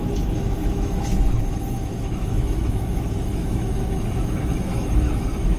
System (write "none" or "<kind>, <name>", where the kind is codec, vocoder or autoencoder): autoencoder, DAC-VAE